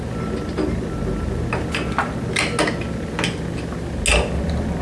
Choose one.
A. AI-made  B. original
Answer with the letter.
B